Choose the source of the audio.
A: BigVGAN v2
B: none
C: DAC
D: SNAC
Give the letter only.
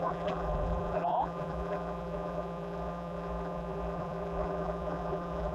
A